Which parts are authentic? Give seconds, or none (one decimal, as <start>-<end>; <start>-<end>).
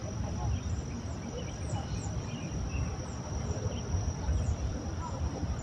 0.0-5.6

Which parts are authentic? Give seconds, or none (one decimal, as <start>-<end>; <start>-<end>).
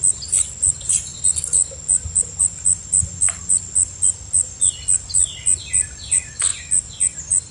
0.0-7.5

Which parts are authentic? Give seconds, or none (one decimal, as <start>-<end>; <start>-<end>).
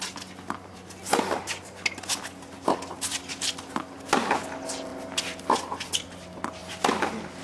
0.0-7.4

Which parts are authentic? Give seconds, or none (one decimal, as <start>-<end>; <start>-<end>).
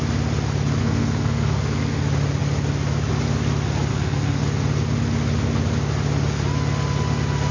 0.0-0.8; 2.0-3.9; 4.4-7.5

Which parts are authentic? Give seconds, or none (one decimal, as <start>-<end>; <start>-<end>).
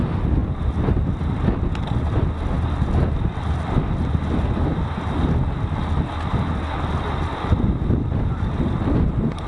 0.0-9.5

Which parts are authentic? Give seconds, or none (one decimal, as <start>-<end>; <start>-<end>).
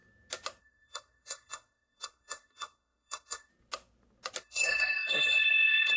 0.0-0.6; 3.5-4.4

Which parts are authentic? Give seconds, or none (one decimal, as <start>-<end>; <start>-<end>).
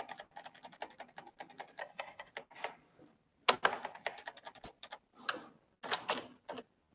0.0-1.8; 2.3-6.9